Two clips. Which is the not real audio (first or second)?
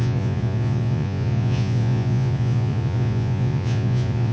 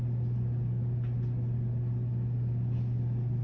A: first